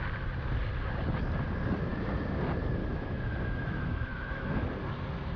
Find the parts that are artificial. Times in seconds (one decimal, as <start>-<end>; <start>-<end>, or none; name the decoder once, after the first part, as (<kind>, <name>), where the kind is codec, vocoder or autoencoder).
2.8-4.5 (autoencoder, DAC-VAE)